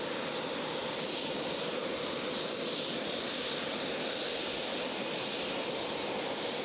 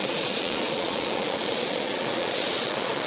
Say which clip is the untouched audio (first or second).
first